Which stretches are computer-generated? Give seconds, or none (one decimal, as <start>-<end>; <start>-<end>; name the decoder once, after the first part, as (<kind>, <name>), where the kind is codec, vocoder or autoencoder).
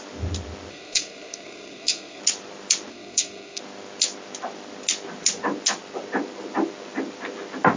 0.7-2.2 (codec, SNAC); 2.9-3.6